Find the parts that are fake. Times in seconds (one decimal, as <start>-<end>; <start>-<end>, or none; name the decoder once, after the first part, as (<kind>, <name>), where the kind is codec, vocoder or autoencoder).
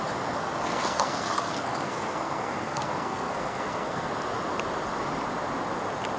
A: 0.4-4.1 (codec, SNAC)